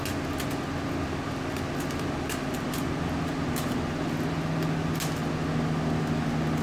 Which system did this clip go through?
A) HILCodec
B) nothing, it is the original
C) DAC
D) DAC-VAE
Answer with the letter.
B